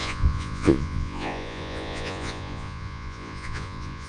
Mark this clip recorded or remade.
remade